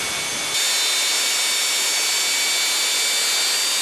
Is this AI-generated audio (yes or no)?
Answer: no